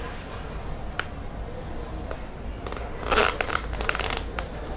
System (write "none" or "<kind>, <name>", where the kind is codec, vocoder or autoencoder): none